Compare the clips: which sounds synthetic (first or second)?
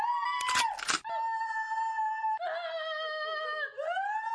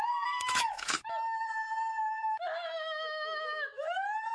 second